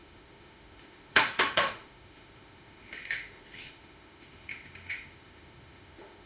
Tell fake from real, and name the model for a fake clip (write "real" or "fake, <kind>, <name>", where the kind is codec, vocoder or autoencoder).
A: fake, autoencoder, DAC-VAE